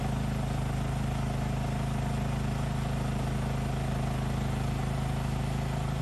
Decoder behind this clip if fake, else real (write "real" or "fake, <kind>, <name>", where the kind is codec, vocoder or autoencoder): real